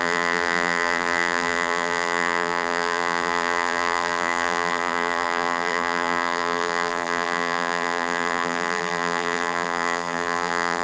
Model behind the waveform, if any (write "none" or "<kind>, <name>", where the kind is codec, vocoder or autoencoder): vocoder, BigVGAN v2